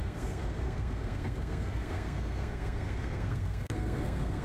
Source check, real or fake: fake